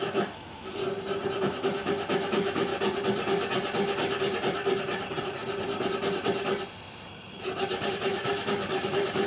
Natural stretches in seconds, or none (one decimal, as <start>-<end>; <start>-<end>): 0.8-1.4; 2.7-7.9

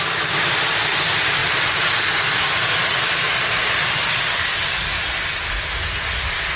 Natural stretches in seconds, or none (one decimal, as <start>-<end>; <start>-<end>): 0.0-6.6

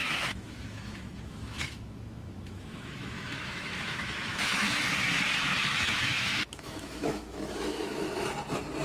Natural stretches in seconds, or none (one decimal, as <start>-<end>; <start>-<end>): 4.8-5.5; 8.2-8.8

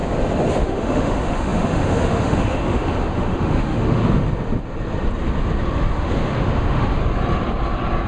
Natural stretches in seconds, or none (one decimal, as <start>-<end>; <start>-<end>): 0.0-0.5; 4.0-5.6; 7.0-8.1

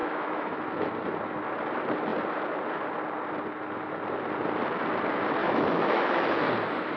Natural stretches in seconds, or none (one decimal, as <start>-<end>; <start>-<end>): 0.6-5.4; 6.5-7.0

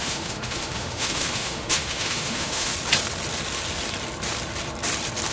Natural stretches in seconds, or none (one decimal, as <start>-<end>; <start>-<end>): 2.7-5.3